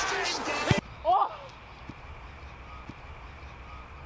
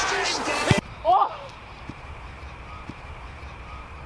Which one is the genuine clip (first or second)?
first